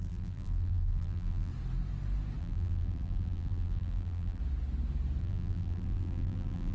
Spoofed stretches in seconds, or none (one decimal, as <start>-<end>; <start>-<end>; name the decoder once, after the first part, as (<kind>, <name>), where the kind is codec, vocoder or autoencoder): 0.0-1.5 (vocoder, BigVGAN v2); 2.4-4.4; 5.2-6.7